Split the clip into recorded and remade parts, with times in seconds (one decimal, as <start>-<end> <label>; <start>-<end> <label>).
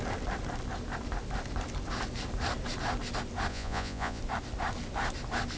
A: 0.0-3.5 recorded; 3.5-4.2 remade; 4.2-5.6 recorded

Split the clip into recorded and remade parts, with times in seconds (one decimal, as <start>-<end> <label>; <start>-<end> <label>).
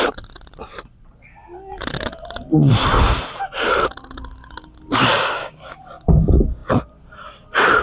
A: 0.0-5.1 recorded; 5.1-5.8 remade; 5.8-7.8 recorded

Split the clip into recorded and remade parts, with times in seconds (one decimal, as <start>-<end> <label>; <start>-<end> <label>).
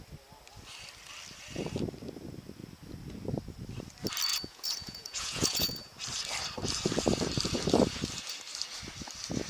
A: 0.0-4.3 recorded; 4.3-5.9 remade; 5.9-9.5 recorded